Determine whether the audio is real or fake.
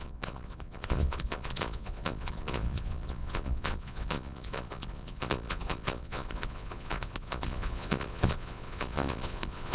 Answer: fake